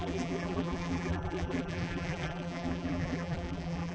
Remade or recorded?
remade